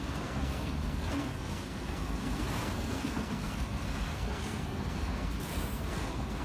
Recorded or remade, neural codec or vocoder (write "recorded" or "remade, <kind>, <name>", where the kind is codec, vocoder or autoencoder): remade, codec, SNAC